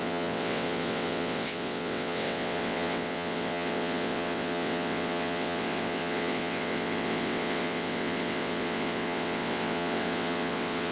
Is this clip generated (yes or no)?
yes